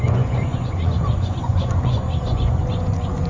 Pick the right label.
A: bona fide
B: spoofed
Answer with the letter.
B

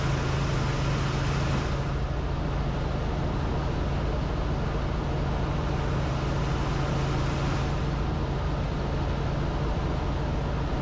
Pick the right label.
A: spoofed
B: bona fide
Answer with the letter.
B